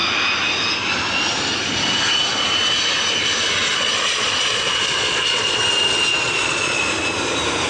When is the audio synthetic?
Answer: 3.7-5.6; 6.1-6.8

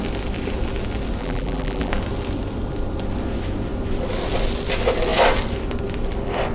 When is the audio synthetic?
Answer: 1.2-1.9

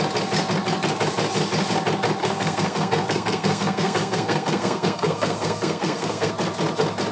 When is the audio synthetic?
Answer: 2.2-6.3

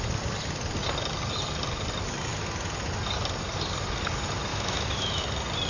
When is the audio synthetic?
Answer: 4.5-5.2

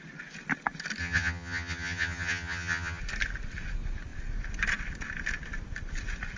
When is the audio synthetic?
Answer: 1.0-3.0

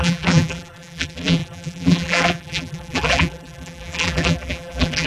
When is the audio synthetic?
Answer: 0.0-5.1